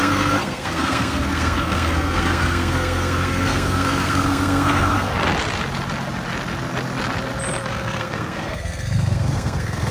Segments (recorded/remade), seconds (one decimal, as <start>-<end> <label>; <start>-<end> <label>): 0.0-5.1 remade; 5.1-7.7 recorded; 7.7-9.9 remade